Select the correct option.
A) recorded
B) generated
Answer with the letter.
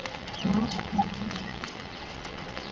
B